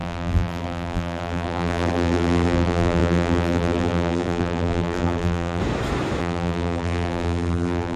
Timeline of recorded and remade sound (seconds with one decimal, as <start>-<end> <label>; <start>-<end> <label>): 0.0-5.6 remade; 5.6-6.2 recorded; 6.2-8.0 remade